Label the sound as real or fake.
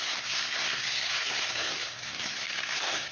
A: fake